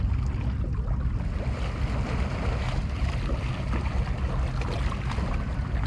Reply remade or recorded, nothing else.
recorded